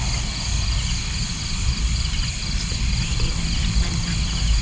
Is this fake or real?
real